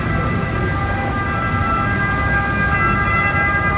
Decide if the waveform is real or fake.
real